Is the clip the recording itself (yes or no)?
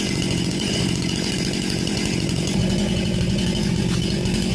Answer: no